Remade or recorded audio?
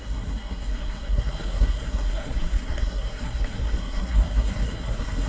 remade